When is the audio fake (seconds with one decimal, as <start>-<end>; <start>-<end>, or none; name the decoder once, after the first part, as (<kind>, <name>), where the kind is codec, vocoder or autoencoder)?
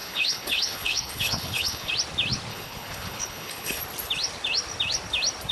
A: 0.0-1.9 (codec, HILCodec); 2.5-3.8